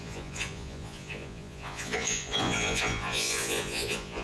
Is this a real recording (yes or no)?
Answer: no